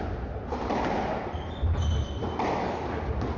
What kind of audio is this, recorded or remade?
recorded